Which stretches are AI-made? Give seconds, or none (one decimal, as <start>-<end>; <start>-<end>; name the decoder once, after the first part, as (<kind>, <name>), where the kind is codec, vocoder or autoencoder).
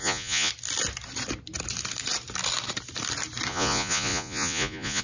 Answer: 0.0-0.5 (vocoder, Vocos); 3.5-5.0